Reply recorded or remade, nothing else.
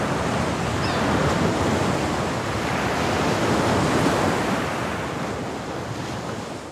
recorded